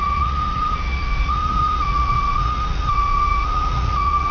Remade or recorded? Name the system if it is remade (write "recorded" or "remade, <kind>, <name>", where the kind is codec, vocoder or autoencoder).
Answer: remade, vocoder, Vocos